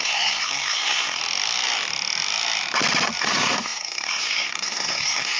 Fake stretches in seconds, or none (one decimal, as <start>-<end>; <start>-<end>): 0.0-1.2; 3.2-5.4